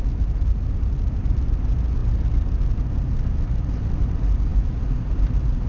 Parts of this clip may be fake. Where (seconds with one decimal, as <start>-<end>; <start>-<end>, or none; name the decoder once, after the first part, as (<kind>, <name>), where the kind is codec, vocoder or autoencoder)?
0.0-2.0 (vocoder, BigVGAN v2); 3.3-5.7